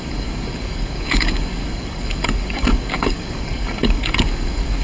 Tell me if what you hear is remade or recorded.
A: remade